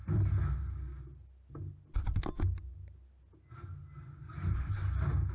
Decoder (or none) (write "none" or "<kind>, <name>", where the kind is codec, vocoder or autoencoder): none